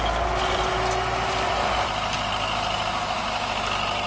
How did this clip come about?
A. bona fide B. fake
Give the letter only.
A